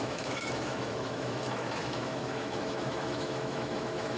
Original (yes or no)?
no